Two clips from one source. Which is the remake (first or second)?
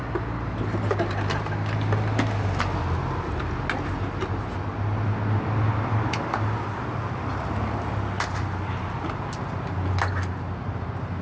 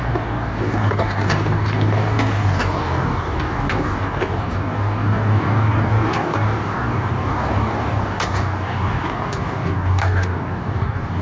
second